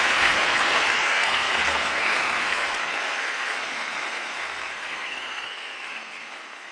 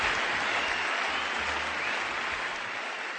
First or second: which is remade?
first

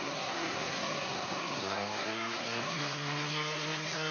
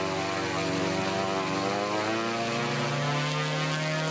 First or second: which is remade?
first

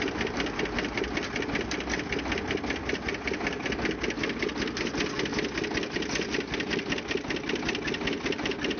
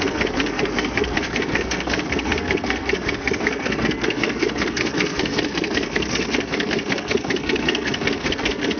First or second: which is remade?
second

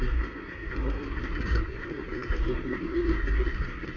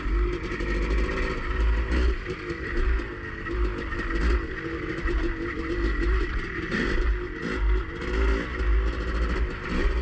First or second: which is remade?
first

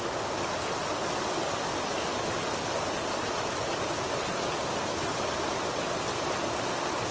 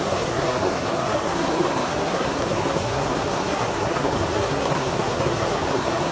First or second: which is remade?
second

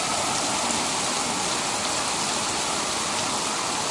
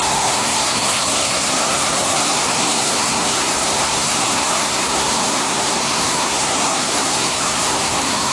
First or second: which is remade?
second